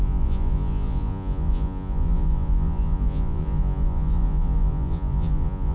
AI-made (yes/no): yes